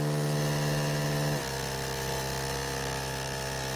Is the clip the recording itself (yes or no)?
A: yes